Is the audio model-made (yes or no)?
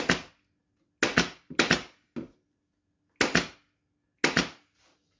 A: no